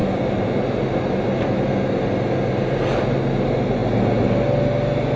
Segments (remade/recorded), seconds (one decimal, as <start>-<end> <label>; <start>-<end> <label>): 0.0-5.2 recorded